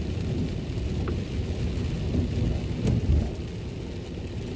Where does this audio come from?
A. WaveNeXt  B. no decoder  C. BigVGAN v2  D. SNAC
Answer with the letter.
B